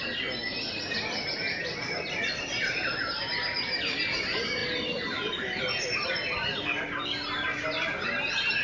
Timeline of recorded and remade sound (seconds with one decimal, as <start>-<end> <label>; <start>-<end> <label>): 0.0-8.6 recorded